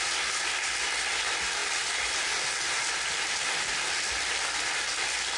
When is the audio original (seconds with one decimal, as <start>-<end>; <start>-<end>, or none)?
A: 0.0-5.4